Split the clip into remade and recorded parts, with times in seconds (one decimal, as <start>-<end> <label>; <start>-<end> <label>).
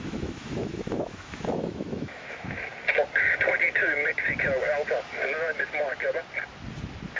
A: 0.0-2.7 remade; 2.7-7.2 recorded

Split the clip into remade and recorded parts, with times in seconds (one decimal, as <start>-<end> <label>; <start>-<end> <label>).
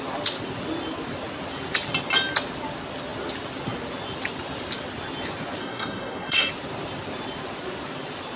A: 0.0-5.6 recorded; 5.6-6.5 remade; 6.5-8.4 recorded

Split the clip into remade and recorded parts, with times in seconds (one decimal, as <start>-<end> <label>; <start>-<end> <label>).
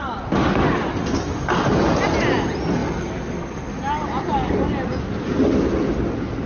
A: 0.0-6.5 recorded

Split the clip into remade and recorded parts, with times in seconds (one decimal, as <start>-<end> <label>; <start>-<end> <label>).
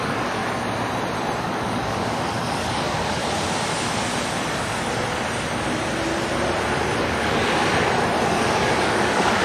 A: 0.0-0.4 remade; 0.4-1.4 recorded; 1.4-3.2 remade; 3.2-7.0 recorded; 7.0-7.6 remade; 7.6-8.2 recorded; 8.2-9.4 remade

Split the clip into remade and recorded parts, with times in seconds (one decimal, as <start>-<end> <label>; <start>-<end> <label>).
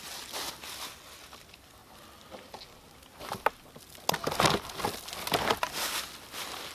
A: 0.0-6.7 recorded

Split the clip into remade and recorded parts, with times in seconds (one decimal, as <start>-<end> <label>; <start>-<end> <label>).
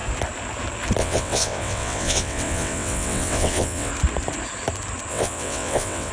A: 0.0-1.0 recorded; 1.0-3.9 remade; 3.9-5.1 recorded; 5.1-6.1 remade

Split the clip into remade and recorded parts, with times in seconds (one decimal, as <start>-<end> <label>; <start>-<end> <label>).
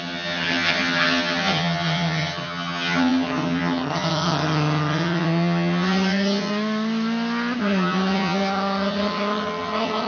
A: 0.0-6.5 remade; 6.5-7.6 recorded; 7.6-10.1 remade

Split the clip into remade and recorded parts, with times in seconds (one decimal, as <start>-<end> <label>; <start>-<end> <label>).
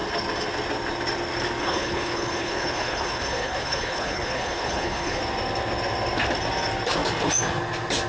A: 0.0-1.6 recorded; 1.6-5.2 remade; 5.2-8.1 recorded